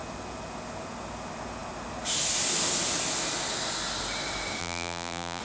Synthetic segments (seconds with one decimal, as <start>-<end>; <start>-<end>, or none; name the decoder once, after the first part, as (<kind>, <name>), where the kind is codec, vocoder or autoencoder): 4.6-5.4 (vocoder, BigVGAN v2)